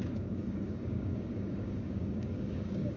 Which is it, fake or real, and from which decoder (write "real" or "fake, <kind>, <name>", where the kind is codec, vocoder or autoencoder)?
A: fake, codec, DAC